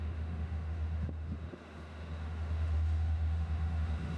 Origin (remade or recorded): remade